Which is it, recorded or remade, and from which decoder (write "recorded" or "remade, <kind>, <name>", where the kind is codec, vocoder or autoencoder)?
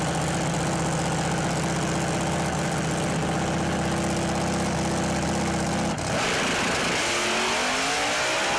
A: recorded